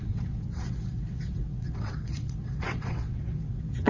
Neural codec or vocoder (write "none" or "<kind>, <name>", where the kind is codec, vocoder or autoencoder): vocoder, WaveNeXt